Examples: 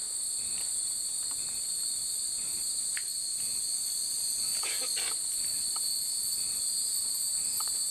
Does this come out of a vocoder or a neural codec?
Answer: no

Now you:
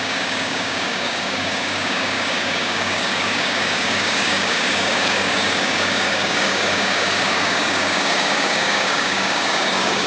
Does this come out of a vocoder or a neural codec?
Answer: yes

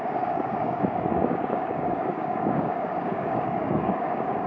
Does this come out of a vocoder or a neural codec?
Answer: yes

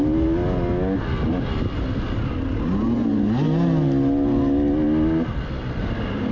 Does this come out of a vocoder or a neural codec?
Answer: no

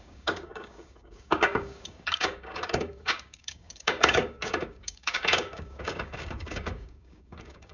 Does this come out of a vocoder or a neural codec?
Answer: yes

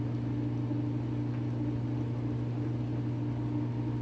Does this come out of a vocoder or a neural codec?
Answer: no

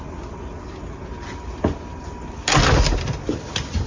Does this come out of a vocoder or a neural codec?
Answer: no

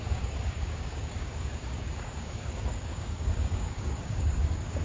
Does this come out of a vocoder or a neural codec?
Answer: yes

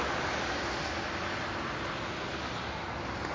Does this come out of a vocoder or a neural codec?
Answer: no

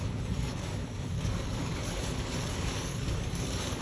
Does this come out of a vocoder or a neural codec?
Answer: yes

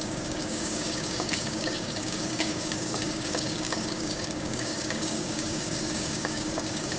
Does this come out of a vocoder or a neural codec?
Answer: yes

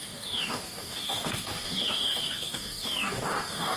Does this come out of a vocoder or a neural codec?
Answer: yes